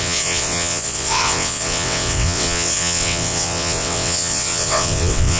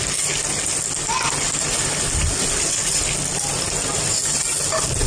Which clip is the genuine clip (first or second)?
second